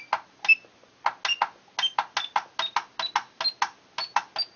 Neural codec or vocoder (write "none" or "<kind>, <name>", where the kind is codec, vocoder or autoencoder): none